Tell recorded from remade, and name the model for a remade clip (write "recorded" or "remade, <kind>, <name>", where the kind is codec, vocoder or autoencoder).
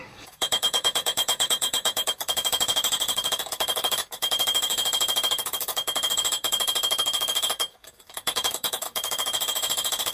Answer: remade, codec, DAC